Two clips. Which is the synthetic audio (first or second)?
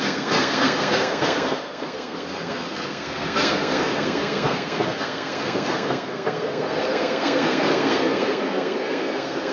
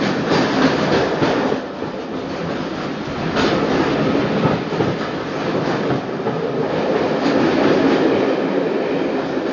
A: first